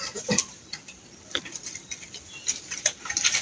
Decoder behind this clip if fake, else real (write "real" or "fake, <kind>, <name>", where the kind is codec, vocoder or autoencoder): fake, vocoder, BigVGAN v2